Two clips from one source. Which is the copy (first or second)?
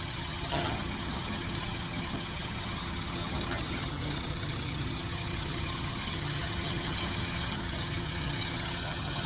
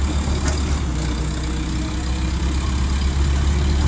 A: first